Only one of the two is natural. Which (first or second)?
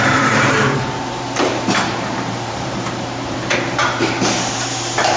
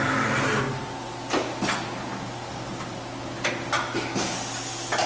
second